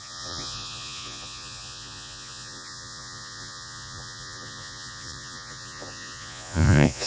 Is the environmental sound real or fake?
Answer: fake